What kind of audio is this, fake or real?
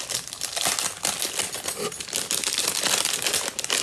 real